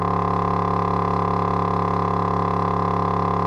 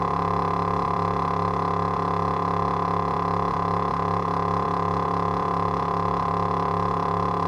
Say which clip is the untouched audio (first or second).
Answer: first